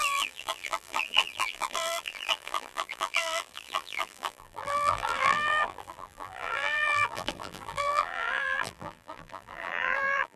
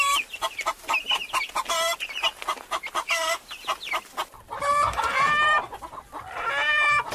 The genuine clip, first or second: second